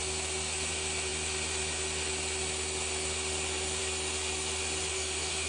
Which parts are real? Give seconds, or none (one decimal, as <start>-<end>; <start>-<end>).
0.0-4.9